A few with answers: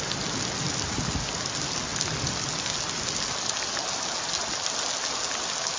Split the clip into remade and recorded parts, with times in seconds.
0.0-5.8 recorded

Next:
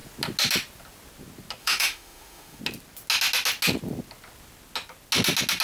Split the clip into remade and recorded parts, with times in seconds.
0.0-1.6 recorded; 1.6-2.6 remade; 2.6-5.6 recorded